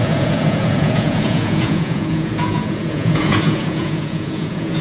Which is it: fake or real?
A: fake